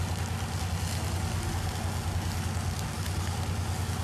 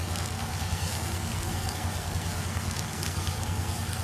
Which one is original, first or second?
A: first